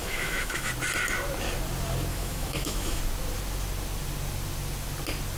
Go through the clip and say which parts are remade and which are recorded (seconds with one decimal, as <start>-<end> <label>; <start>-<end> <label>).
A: 0.0-0.7 remade; 0.7-2.1 recorded; 2.1-3.0 remade; 3.0-5.4 recorded